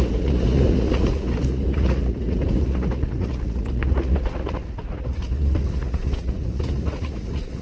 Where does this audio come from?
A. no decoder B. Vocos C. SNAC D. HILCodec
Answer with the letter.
B